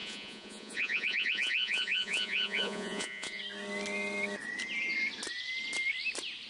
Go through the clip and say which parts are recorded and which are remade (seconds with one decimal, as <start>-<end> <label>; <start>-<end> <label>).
0.0-3.4 remade; 3.4-6.5 recorded